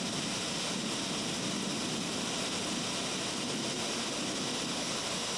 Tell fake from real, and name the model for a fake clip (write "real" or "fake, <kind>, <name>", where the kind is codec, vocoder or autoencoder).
real